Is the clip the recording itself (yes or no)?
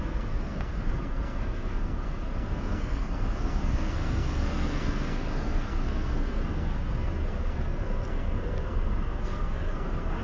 no